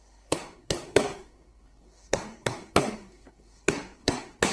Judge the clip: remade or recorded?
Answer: remade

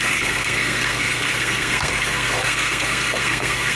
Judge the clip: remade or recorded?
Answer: remade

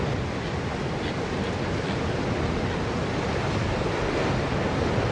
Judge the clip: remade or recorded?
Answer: recorded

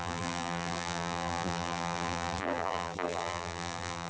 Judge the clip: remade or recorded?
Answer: remade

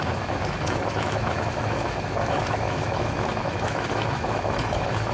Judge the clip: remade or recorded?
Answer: remade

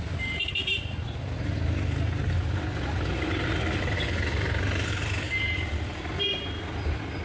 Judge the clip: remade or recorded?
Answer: recorded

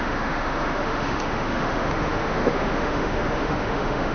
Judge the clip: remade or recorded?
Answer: remade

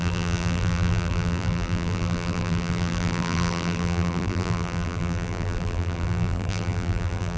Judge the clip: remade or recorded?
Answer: remade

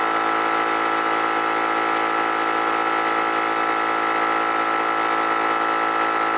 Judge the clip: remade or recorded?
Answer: recorded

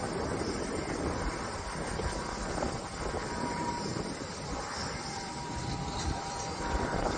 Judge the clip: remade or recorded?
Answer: remade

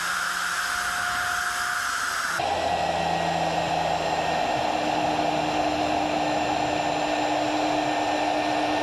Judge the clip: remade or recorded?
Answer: recorded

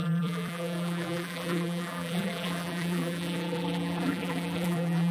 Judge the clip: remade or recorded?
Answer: remade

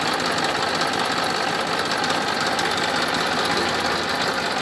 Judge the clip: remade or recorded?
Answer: recorded